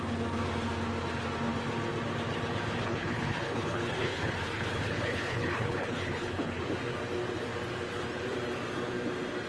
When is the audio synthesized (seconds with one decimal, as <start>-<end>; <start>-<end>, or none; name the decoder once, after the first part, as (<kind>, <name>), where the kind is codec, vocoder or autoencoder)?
2.8-6.6 (codec, HILCodec)